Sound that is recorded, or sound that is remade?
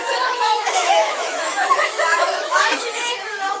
remade